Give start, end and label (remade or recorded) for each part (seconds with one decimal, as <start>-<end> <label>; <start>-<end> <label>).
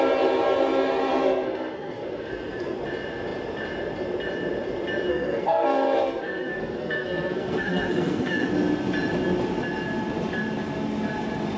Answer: 0.0-1.1 recorded; 1.1-2.8 remade; 2.8-5.1 recorded; 5.1-8.5 remade; 8.5-11.6 recorded